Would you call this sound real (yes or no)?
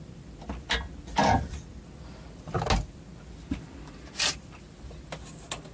yes